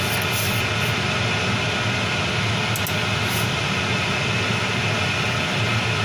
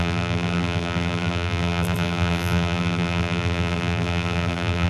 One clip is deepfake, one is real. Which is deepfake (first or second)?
second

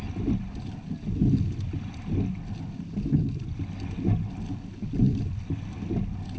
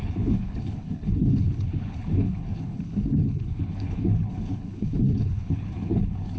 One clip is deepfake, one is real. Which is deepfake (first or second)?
second